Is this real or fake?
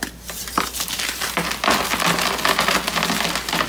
real